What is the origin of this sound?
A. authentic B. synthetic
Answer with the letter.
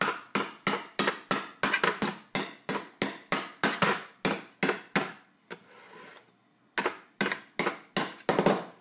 A